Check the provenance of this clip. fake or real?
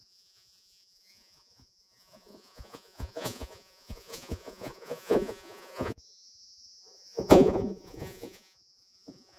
fake